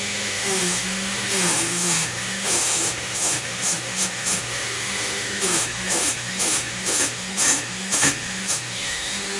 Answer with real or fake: fake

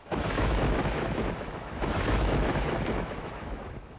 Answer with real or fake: fake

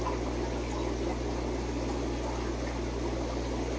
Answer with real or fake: real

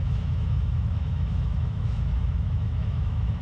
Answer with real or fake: fake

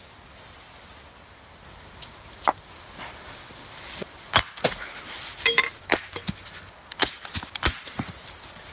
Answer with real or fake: real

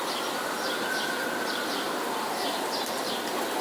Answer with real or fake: real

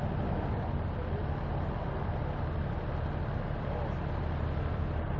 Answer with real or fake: real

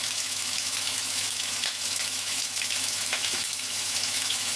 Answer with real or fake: fake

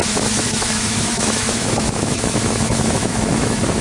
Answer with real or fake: fake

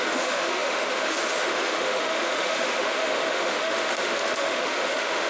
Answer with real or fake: fake